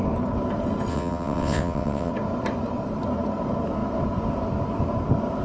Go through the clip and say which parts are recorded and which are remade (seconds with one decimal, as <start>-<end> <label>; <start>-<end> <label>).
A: 0.0-0.9 recorded; 0.9-2.1 remade; 2.1-5.4 recorded